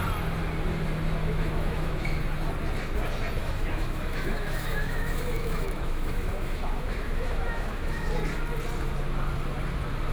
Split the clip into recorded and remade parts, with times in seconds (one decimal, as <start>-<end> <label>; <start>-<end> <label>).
0.0-1.2 recorded; 1.2-2.2 remade; 2.2-3.4 recorded; 3.4-8.1 remade; 8.1-10.1 recorded